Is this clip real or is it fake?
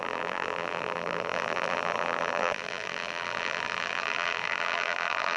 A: fake